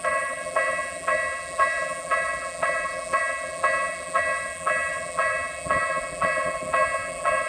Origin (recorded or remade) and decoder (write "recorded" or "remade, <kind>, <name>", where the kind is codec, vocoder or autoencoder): remade, vocoder, BigVGAN v2